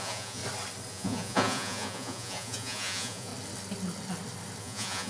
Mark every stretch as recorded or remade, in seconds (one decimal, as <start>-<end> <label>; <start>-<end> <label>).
0.0-0.4 remade; 0.4-0.9 recorded; 0.9-3.3 remade; 3.3-4.6 recorded; 4.6-5.1 remade